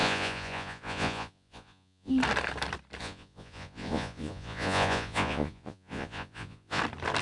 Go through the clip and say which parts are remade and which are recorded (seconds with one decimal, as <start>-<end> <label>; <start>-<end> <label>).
0.0-2.1 remade; 2.1-3.0 recorded; 3.0-6.8 remade; 6.8-7.2 recorded